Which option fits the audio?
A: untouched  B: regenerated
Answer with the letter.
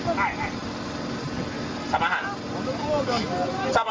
A